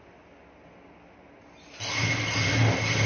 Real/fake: real